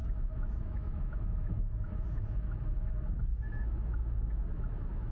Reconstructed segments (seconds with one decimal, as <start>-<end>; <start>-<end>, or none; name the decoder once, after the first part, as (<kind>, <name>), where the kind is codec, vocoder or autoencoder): 0.0-2.9 (autoencoder, DAC-VAE); 3.3-5.1